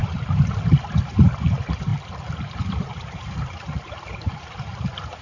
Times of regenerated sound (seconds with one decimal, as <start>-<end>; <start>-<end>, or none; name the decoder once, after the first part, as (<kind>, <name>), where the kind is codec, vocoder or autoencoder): 0.0-0.7 (vocoder, BigVGAN v2); 1.9-5.2